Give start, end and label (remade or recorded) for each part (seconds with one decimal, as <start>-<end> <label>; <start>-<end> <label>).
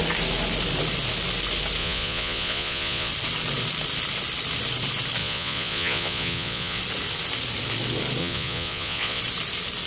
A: 0.0-1.8 recorded; 1.8-3.1 remade; 3.1-5.2 recorded; 5.2-6.8 remade; 6.8-8.2 recorded; 8.2-9.2 remade; 9.2-9.9 recorded